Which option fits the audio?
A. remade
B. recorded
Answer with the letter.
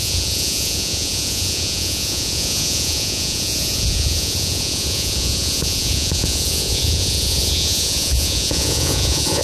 A